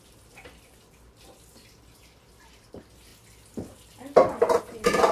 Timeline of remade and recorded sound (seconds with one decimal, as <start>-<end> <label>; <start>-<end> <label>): 0.0-3.1 remade; 3.1-4.6 recorded; 4.6-5.1 remade